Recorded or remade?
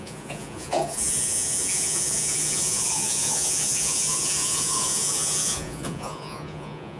remade